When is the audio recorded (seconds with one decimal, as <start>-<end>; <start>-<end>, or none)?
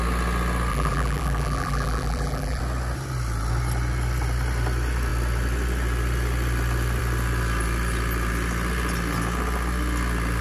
0.0-0.7; 2.6-10.4